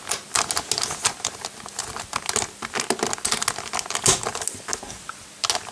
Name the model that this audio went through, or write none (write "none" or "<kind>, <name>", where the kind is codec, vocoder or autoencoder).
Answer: none